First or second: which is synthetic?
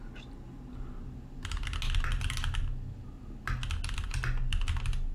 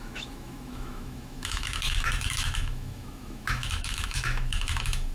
second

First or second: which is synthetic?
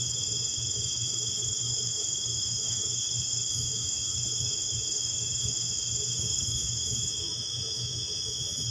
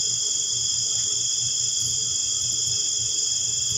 first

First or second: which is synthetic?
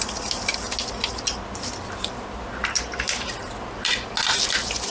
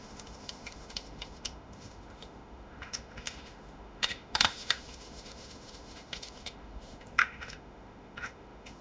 second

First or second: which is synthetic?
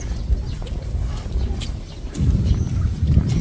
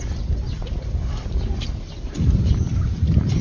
second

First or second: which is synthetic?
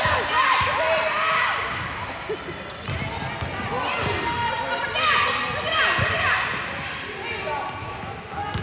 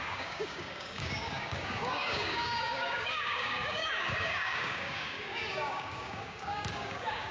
second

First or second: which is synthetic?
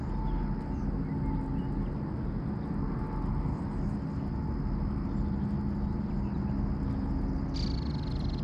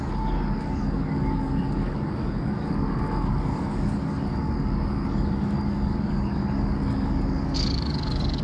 second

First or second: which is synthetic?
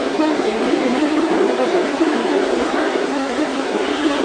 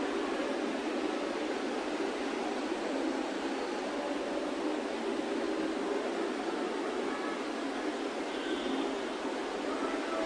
first